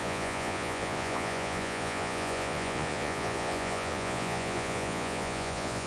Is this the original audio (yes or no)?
no